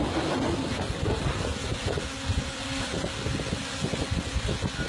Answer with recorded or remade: recorded